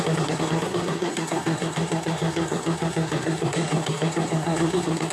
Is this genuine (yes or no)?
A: no